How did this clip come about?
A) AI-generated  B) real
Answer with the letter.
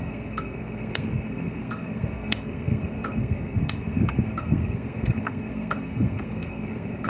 A